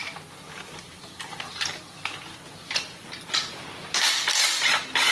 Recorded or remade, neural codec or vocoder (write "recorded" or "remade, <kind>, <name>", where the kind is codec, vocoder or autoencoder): recorded